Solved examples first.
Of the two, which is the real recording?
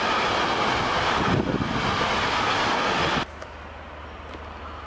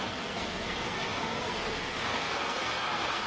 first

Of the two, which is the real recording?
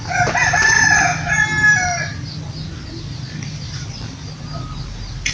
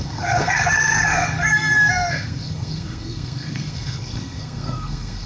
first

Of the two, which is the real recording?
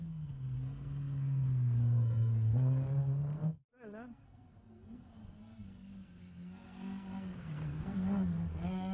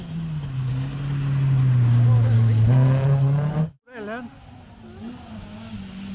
second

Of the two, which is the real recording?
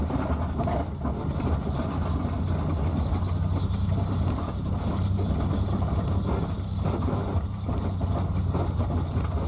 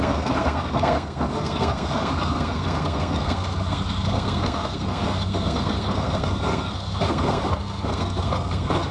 first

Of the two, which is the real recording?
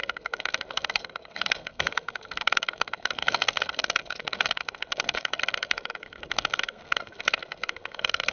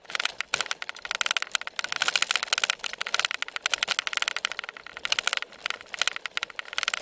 second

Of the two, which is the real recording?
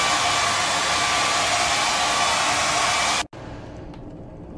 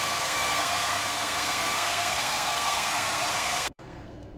first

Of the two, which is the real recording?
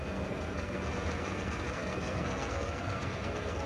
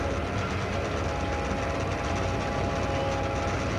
second